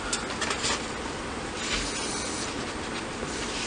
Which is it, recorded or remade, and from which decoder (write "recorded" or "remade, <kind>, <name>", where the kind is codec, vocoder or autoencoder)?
recorded